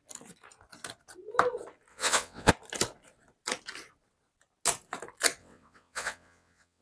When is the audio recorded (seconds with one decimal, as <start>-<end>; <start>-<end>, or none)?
0.0-1.9; 2.5-5.4